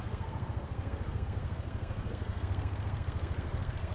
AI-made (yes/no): yes